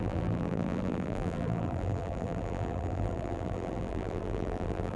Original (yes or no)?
no